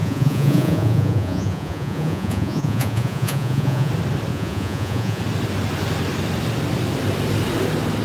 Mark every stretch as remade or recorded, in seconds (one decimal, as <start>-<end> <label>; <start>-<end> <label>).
0.0-3.9 remade; 3.9-4.3 recorded; 4.3-5.2 remade; 5.2-8.0 recorded